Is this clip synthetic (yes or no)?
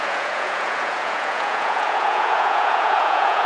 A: yes